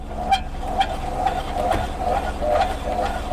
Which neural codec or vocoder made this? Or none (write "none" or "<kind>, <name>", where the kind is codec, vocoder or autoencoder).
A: none